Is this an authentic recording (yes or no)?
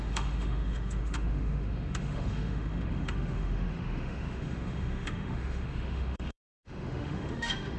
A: no